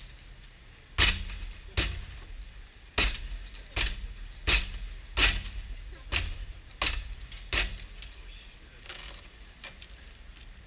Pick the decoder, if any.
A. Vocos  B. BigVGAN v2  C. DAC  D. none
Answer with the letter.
D